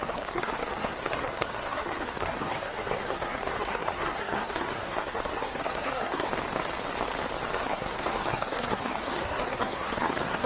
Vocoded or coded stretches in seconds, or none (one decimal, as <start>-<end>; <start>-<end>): 0.0-6.3; 7.5-10.5

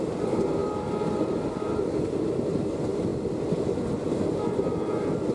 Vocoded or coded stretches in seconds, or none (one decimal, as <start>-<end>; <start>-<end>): none